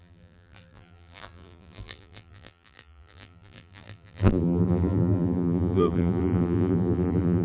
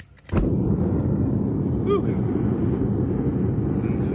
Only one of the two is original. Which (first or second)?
second